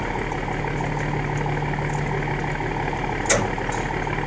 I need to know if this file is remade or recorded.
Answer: recorded